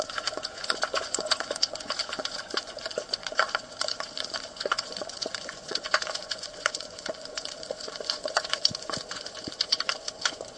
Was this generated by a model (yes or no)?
yes